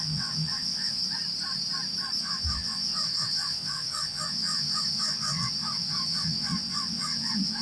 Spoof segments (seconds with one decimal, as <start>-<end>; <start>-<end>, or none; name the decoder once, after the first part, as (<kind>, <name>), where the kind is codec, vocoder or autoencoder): 0.0-1.0 (vocoder, WaveNeXt); 2.2-7.6